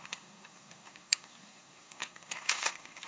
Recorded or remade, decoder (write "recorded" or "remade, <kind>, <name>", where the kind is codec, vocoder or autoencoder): remade, codec, SNAC